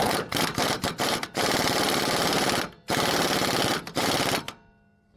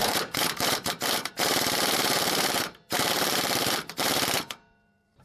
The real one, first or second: first